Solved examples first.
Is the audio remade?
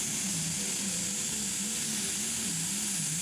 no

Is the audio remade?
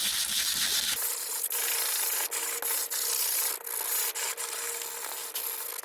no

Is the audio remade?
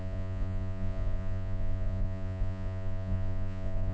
yes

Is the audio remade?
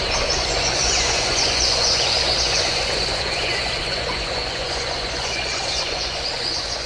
yes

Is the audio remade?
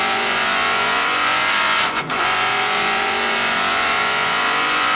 yes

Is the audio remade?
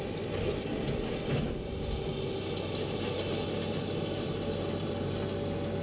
no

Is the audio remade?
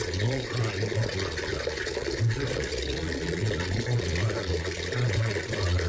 yes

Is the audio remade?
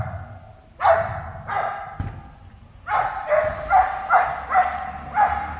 no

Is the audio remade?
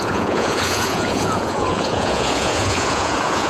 yes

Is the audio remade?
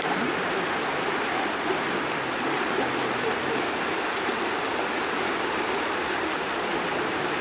no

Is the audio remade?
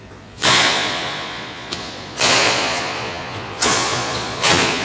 yes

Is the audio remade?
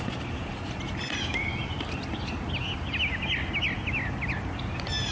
no